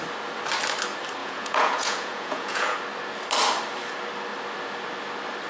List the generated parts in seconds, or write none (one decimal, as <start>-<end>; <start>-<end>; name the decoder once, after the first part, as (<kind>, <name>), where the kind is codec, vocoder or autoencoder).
1.2-2.8 (vocoder, Vocos)